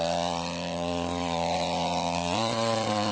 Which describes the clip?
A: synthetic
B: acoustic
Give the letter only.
A